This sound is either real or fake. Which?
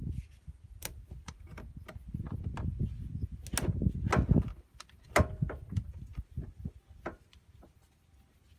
real